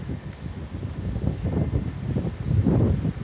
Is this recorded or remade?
recorded